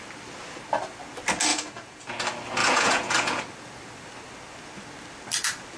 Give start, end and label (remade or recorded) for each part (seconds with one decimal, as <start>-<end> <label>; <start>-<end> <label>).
0.0-1.5 recorded; 1.5-2.2 remade; 2.2-2.6 recorded; 2.6-3.4 remade; 3.4-5.8 recorded

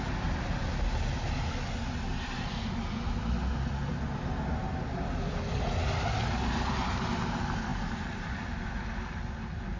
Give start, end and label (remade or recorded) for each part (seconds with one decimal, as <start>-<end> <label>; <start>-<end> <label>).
0.0-9.8 recorded